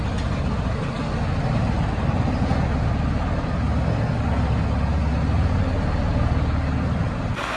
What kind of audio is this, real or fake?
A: real